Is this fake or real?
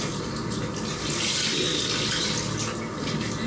real